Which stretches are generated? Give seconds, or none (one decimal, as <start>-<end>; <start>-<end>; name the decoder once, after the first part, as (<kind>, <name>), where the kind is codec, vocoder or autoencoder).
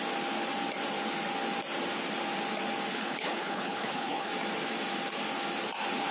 2.9-4.3 (codec, HILCodec)